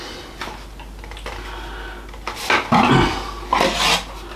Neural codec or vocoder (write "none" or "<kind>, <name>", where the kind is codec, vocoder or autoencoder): none